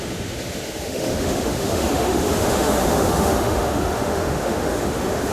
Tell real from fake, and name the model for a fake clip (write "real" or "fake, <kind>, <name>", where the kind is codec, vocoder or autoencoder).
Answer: fake, autoencoder, DAC-VAE